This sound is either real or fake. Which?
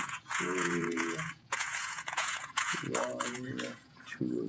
fake